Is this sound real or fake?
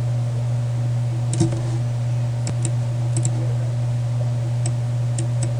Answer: real